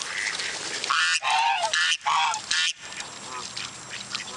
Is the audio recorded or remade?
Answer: recorded